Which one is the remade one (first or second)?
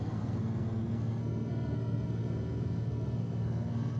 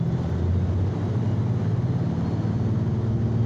first